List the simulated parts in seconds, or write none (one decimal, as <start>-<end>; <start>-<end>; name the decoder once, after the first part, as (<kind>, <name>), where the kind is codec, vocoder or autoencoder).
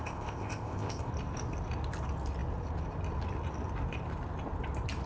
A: 0.0-1.1 (codec, ZipCodec)